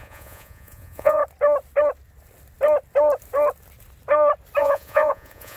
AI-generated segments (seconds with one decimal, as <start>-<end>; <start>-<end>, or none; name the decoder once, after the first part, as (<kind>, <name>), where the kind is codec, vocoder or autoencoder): 0.0-1.2 (vocoder, Vocos); 4.6-5.6